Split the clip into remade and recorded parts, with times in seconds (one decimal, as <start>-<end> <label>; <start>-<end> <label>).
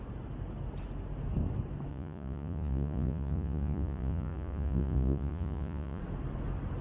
0.0-1.9 recorded; 1.9-6.0 remade; 6.0-6.8 recorded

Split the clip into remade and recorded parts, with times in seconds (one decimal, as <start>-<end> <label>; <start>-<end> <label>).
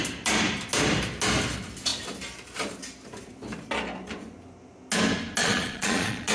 0.0-5.4 recorded; 5.4-6.3 remade